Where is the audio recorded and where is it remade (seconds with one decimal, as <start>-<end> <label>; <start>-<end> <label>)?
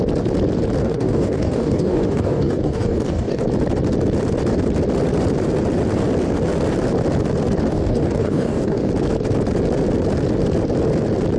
0.0-0.8 recorded; 0.8-3.4 remade; 3.4-7.7 recorded; 7.7-8.9 remade; 8.9-11.4 recorded